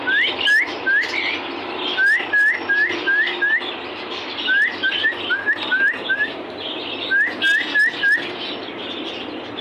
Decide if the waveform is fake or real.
real